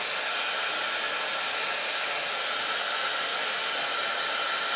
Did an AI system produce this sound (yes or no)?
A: no